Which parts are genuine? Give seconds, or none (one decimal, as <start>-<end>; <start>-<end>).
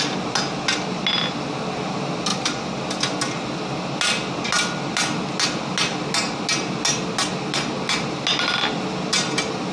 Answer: 0.0-2.3; 2.8-9.7